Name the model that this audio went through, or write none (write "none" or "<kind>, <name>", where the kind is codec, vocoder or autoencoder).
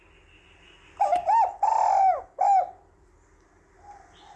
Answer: none